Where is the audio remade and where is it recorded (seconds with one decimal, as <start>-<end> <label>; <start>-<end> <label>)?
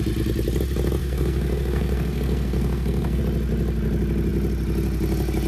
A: 0.0-1.0 recorded; 1.0-3.2 remade; 3.2-5.5 recorded